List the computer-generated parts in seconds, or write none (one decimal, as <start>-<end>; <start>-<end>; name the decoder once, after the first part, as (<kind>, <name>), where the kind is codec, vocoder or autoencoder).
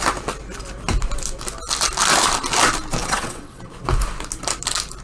3.0-3.6 (vocoder, WaveNeXt)